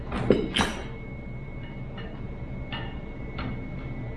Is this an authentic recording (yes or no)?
yes